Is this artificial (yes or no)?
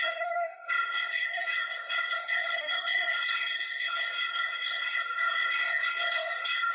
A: yes